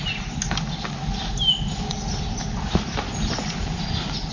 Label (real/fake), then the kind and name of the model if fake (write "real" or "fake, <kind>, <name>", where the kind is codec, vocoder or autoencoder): real